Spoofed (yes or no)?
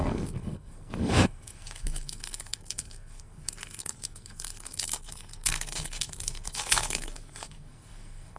yes